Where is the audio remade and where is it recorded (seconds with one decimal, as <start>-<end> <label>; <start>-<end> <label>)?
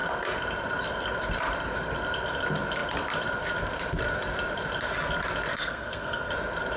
0.0-5.5 recorded; 5.5-6.3 remade; 6.3-6.8 recorded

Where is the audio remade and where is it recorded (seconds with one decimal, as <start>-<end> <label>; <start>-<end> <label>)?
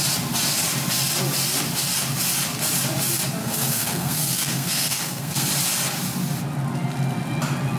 0.0-3.4 recorded; 3.4-5.5 remade; 5.5-7.8 recorded